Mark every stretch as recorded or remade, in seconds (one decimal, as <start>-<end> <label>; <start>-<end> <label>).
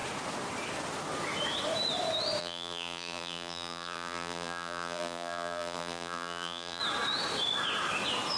0.0-2.4 recorded; 2.4-6.8 remade; 6.8-8.4 recorded